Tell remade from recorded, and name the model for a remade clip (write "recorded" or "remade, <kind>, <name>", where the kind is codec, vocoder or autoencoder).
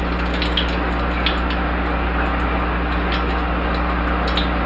recorded